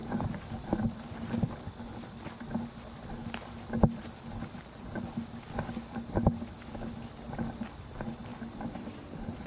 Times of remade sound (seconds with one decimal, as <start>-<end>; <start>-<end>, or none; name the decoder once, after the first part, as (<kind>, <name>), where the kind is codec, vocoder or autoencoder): 0.0-1.5 (vocoder, BigVGAN v2); 8.3-9.5